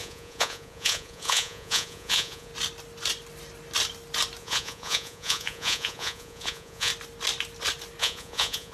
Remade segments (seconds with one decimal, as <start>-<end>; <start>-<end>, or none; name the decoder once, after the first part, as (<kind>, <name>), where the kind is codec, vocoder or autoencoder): 0.0-2.5 (vocoder, Vocos); 4.4-6.9; 8.0-8.7

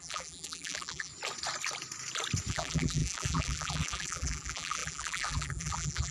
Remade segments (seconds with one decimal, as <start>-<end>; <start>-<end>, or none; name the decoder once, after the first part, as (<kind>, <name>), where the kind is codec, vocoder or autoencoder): 0.0-1.1 (vocoder, BigVGAN v2); 2.5-6.1